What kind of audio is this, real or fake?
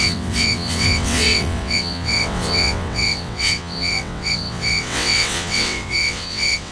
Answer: fake